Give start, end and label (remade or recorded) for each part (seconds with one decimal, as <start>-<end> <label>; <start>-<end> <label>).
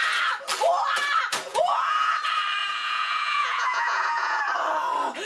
0.0-1.5 recorded; 1.5-2.1 remade; 2.1-2.6 recorded; 2.6-4.4 remade; 4.4-5.2 recorded